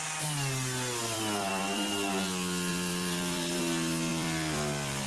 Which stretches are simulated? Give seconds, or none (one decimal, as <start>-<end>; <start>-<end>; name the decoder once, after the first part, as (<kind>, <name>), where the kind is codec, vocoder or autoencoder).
1.0-2.1 (vocoder, BigVGAN v2); 2.7-3.6; 4.1-5.1